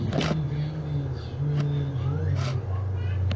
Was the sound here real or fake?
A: real